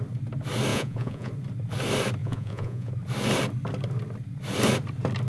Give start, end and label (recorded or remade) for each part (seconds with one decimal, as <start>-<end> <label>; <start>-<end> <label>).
0.0-0.7 recorded; 0.7-1.3 remade; 1.3-2.2 recorded; 2.2-2.9 remade; 2.9-5.3 recorded